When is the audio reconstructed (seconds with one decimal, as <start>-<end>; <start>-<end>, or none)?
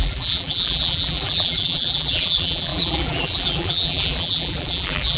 0.0-5.2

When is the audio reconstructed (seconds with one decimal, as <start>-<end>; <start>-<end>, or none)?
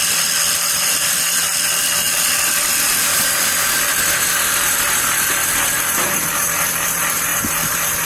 7.3-8.1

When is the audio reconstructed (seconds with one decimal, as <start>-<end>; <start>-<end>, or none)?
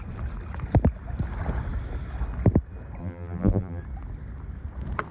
3.0-3.8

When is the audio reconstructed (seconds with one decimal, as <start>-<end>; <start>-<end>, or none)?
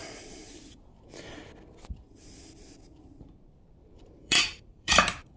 3.8-5.4